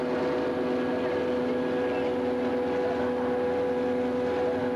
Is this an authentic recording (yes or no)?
yes